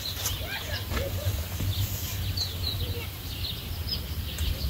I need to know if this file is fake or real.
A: real